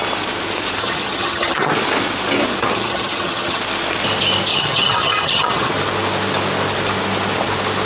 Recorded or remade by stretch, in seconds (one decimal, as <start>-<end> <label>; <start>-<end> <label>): 0.0-0.8 recorded; 0.8-1.7 remade; 1.7-2.6 recorded; 2.6-3.6 remade; 3.6-4.5 recorded; 4.5-5.7 remade; 5.7-7.9 recorded